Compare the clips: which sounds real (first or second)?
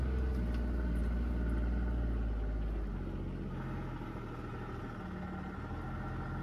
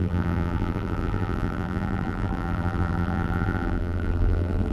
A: first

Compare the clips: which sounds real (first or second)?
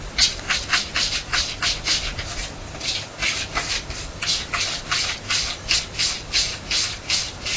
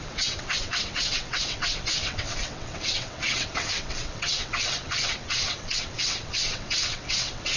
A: first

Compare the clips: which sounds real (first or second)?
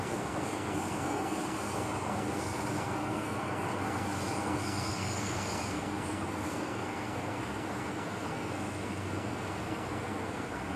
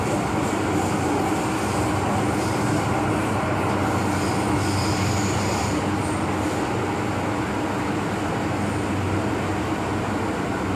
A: second